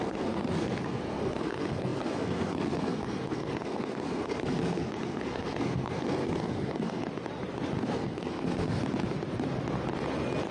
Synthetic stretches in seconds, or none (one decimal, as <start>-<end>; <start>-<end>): 0.0-7.0; 7.8-8.8

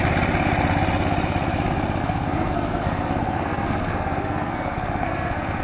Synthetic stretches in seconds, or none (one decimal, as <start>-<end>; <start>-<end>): 2.0-5.6